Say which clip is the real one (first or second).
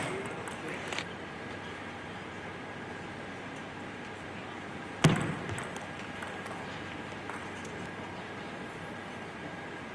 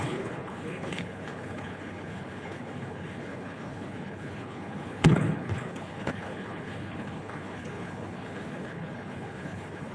first